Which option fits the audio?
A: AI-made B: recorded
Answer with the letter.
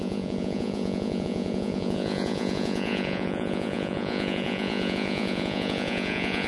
A